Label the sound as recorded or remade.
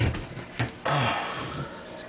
recorded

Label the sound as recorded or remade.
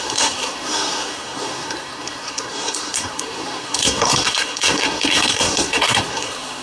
remade